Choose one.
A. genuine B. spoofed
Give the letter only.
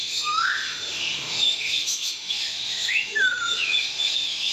B